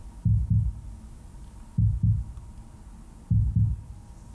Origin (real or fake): real